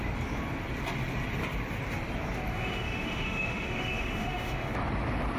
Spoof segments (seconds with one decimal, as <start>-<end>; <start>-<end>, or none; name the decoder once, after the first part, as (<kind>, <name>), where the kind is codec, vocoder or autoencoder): 2.5-4.7 (autoencoder, DAC-VAE)